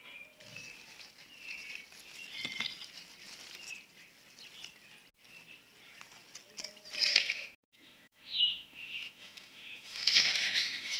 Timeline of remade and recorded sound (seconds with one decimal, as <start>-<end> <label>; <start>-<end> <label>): 0.0-7.1 recorded; 7.1-11.0 remade